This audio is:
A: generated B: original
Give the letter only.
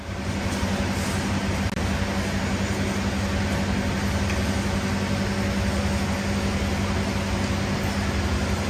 B